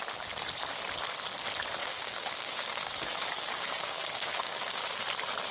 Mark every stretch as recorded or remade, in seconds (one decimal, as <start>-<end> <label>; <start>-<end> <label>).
0.0-1.8 recorded; 1.8-5.0 remade; 5.0-5.5 recorded

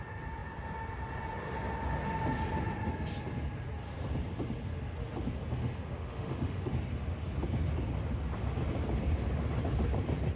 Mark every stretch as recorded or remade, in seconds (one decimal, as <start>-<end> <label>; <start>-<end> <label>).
0.0-5.6 recorded; 5.6-6.7 remade; 6.7-10.3 recorded

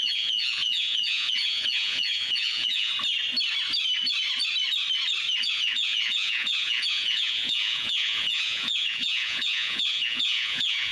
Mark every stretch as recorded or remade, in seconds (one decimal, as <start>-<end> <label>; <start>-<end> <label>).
0.0-2.9 remade; 2.9-5.4 recorded; 5.4-10.9 remade

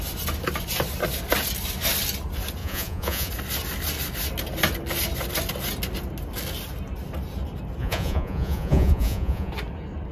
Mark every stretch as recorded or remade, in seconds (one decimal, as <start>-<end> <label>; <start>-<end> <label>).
0.0-2.6 recorded; 2.6-3.3 remade; 3.3-7.8 recorded; 7.8-9.5 remade; 9.5-10.1 recorded